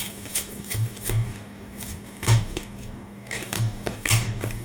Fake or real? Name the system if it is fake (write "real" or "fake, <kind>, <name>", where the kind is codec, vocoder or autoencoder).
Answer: fake, codec, DAC